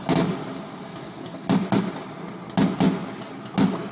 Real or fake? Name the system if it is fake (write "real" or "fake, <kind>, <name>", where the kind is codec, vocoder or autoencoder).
real